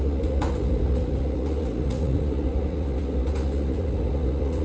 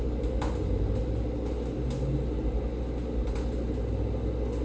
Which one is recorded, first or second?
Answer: second